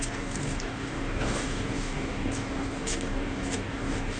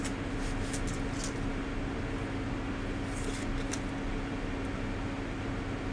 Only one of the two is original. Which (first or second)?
second